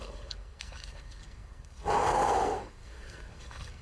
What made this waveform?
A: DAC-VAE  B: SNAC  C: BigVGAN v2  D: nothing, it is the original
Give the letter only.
B